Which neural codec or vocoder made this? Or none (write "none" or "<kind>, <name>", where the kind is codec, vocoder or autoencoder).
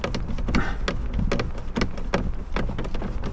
none